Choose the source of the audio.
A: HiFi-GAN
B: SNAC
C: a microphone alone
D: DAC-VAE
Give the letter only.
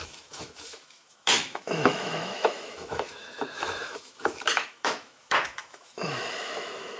D